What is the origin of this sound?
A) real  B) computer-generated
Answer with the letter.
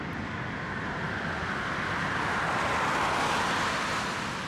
A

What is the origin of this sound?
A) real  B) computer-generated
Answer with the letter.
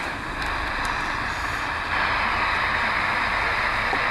A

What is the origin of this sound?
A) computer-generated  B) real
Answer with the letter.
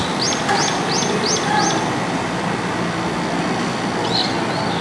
B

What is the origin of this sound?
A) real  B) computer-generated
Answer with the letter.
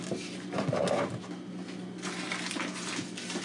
A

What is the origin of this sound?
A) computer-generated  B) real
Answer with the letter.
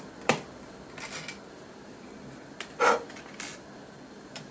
B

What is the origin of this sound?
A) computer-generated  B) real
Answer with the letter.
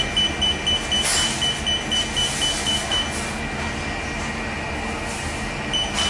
B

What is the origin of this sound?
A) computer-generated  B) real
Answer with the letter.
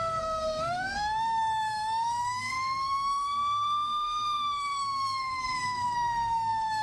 A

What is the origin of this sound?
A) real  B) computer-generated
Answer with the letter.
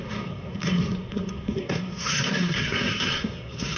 B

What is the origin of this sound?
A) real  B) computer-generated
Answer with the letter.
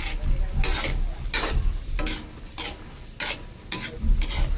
A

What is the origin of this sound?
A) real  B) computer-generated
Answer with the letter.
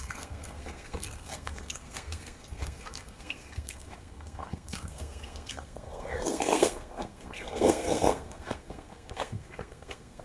B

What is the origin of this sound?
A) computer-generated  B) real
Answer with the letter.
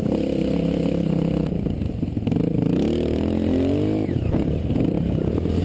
B